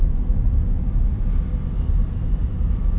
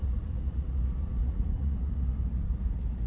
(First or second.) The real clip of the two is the first